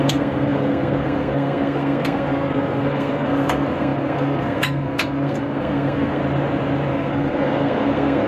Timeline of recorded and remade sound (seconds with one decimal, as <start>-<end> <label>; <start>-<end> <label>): 0.0-6.2 remade; 6.2-6.9 recorded; 6.9-8.3 remade